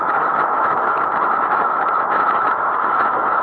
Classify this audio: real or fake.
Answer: fake